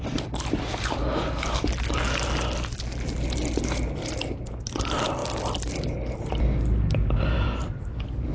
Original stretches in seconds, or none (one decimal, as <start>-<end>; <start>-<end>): 0.0-8.3